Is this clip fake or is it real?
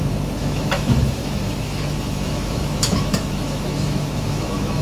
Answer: fake